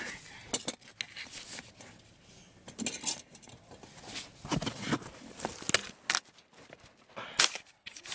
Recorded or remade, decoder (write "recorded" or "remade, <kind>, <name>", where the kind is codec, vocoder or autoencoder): recorded